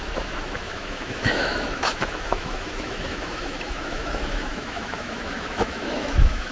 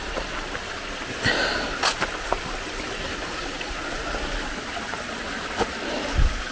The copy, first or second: first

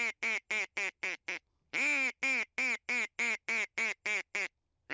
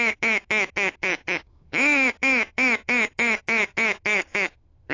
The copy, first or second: second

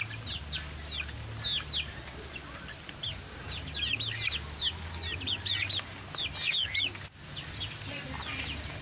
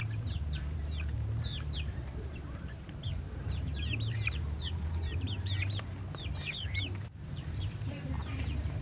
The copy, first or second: second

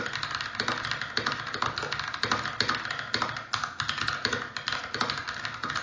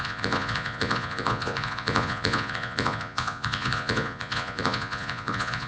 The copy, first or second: second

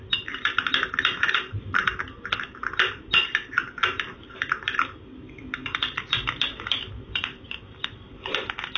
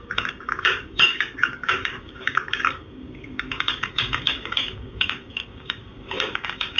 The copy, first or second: second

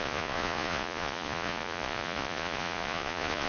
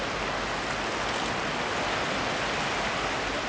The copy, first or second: first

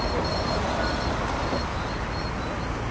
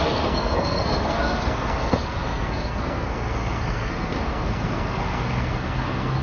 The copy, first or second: second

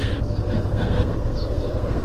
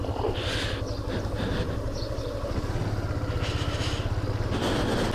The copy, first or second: first